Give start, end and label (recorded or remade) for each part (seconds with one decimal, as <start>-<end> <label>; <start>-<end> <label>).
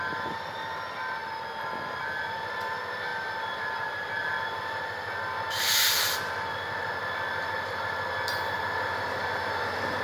0.0-1.2 remade; 1.2-1.8 recorded; 1.8-10.0 remade